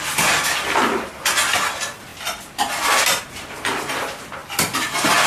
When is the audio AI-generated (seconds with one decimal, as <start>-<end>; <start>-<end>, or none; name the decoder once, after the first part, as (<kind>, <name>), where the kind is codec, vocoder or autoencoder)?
none

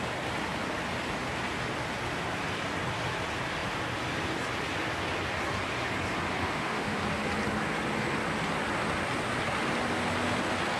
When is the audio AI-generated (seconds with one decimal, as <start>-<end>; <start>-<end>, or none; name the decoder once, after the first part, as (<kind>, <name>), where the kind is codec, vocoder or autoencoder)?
6.4-7.0 (autoencoder, DAC-VAE)

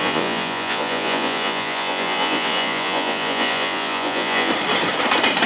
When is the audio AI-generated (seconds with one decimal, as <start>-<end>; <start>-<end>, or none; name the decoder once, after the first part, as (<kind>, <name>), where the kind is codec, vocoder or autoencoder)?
0.0-4.5 (vocoder, Vocos)

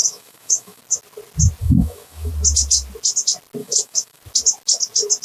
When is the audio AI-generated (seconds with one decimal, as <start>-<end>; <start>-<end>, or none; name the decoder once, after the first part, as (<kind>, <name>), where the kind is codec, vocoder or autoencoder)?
0.0-0.8 (autoencoder, DAC-VAE); 1.6-2.3; 3.6-4.2

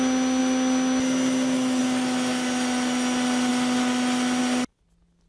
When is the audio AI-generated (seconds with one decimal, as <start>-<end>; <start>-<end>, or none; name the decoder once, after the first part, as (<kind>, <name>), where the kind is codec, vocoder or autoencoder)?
none

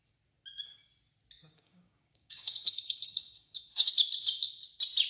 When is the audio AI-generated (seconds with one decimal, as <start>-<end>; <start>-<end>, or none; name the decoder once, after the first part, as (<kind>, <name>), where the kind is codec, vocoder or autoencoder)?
1.4-3.9 (codec, DAC)

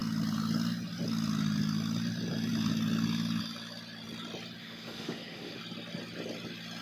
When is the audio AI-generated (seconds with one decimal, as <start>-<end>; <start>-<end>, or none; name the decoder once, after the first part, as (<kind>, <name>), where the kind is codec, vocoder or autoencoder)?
4.6-5.6 (autoencoder, DAC-VAE)

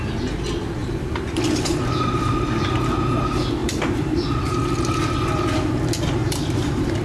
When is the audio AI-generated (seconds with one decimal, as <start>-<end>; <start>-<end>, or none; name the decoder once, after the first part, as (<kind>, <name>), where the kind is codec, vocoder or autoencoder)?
0.8-1.4 (vocoder, BigVGAN v2); 3.6-4.4; 6.2-7.0